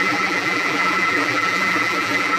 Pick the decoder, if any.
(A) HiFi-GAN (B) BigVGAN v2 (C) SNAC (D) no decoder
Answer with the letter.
B